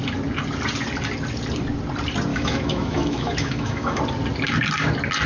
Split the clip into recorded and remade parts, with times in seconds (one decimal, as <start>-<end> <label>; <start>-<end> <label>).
0.0-2.3 recorded; 2.3-4.0 remade; 4.0-5.3 recorded